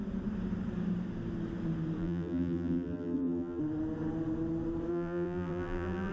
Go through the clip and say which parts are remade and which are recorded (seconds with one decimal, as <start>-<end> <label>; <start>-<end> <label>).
0.0-2.0 recorded; 2.0-3.6 remade; 3.6-4.9 recorded; 4.9-6.1 remade